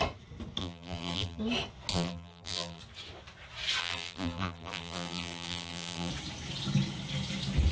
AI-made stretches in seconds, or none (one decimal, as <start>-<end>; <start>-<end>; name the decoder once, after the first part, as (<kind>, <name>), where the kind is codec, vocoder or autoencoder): 0.6-1.4 (vocoder, BigVGAN v2); 1.9-2.8; 3.8-6.1